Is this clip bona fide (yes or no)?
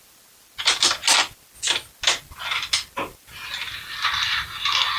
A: yes